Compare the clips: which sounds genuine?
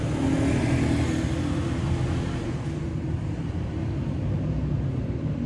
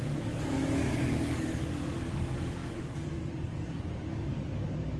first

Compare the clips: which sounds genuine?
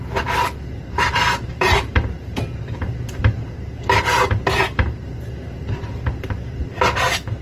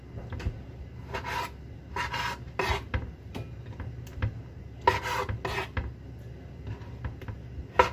second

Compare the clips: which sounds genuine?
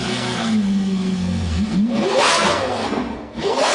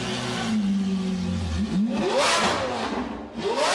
second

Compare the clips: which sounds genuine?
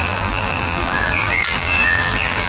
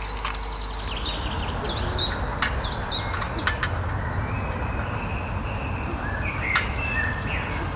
second